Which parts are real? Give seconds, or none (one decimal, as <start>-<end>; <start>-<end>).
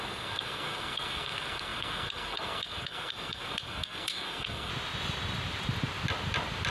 4.7-6.7